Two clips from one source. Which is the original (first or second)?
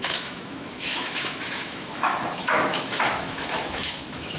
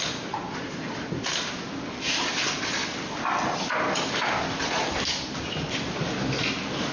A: second